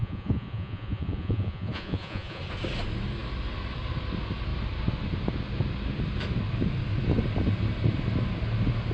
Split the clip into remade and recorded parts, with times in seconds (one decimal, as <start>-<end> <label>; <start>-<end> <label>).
0.0-2.4 remade; 2.4-8.9 recorded